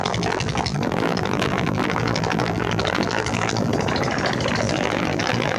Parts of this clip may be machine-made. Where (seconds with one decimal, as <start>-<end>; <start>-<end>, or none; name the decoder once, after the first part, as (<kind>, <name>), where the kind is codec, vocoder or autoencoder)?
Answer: 0.0-3.7 (vocoder, BigVGAN v2); 4.6-5.6